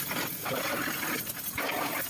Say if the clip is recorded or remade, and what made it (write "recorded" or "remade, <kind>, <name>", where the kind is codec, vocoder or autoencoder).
recorded